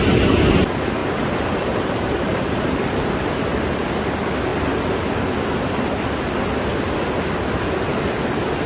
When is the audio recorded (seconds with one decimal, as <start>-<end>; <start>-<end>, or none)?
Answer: 0.0-1.0; 3.3-8.7